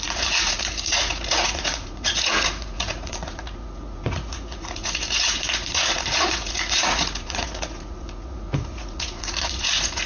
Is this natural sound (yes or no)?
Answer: no